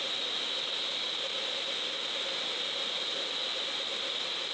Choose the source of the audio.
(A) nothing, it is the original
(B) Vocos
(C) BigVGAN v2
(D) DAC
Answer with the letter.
A